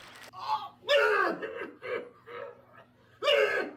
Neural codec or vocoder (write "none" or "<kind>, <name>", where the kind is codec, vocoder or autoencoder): none